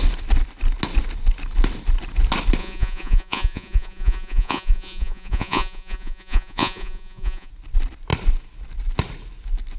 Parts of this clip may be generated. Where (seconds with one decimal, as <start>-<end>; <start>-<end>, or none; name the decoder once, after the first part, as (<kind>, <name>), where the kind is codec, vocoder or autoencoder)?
2.6-7.5 (vocoder, Vocos)